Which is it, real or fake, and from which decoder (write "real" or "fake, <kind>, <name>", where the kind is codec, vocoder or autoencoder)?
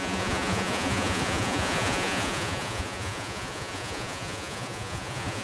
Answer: fake, vocoder, Vocos